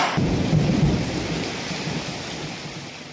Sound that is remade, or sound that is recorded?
recorded